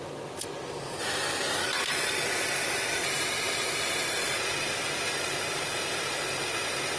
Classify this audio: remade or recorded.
recorded